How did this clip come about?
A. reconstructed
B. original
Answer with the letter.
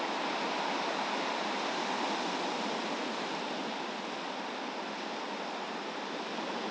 B